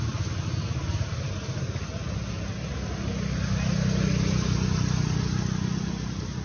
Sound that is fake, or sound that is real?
real